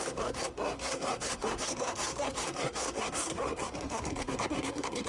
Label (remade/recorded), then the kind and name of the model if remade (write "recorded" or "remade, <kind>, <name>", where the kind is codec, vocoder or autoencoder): remade, codec, SNAC